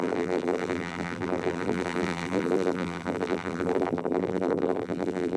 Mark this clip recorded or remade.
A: remade